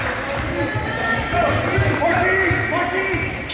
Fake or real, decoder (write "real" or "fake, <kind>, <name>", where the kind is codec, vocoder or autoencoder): real